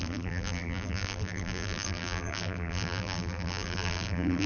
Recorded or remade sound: remade